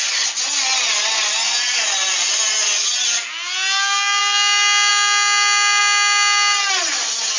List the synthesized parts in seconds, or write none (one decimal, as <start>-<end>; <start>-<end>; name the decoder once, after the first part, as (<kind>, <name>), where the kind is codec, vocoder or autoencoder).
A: none